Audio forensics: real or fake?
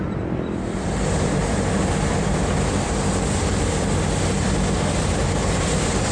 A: fake